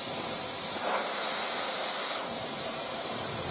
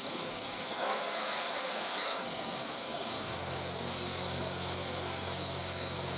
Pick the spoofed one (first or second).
second